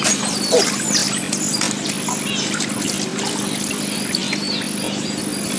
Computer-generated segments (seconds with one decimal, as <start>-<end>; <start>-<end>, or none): none